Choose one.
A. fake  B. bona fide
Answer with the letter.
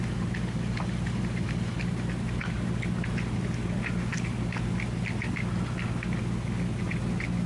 B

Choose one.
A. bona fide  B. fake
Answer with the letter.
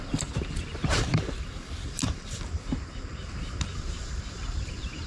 B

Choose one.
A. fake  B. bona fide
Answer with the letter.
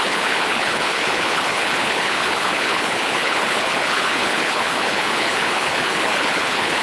A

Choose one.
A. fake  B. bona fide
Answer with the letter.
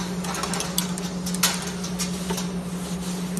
B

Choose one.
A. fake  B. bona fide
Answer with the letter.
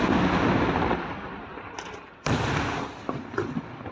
B